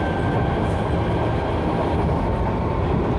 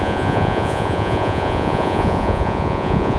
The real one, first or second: first